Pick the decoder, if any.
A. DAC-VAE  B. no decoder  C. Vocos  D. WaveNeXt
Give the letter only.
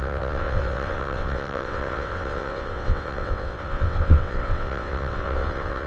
D